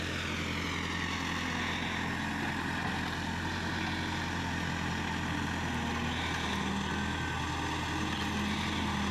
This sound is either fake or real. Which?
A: real